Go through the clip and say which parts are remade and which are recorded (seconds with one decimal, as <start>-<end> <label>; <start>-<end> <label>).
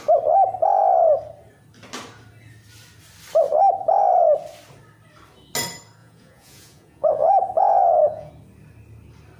0.0-6.0 recorded; 6.0-8.3 remade; 8.3-9.4 recorded